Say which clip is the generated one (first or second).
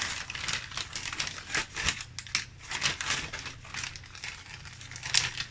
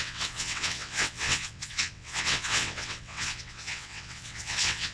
second